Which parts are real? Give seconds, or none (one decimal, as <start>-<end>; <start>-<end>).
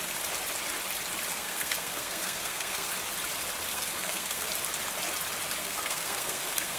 0.0-1.3; 2.9-3.7; 4.5-5.6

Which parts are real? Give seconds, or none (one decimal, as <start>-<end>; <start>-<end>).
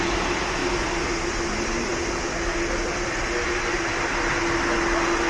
0.0-5.3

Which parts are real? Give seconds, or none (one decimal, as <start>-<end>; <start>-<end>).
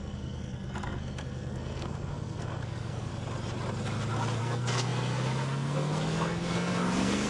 3.1-4.4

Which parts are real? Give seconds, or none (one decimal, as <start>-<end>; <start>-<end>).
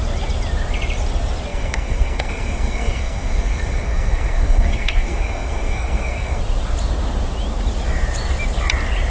0.0-1.5; 6.4-9.1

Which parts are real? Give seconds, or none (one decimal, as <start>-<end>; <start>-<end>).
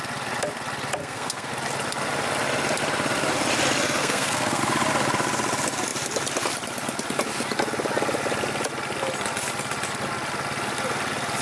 0.0-1.0; 1.5-4.0; 4.6-11.4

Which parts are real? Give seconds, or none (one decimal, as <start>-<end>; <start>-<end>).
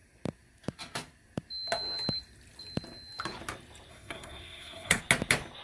0.0-3.9; 5.0-5.6